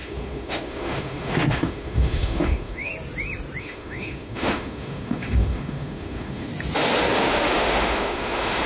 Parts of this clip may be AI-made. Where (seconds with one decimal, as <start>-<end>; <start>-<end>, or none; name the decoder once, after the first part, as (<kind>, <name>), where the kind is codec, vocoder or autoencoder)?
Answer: 0.0-2.9 (autoencoder, DAC-VAE); 3.6-6.5; 7.2-8.7